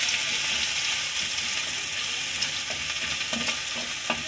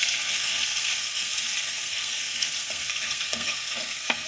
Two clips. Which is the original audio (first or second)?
first